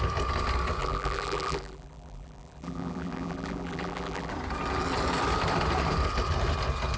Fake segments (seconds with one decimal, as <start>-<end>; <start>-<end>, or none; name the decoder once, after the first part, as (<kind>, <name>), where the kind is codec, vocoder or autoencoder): 0.8-4.3 (vocoder, BigVGAN v2)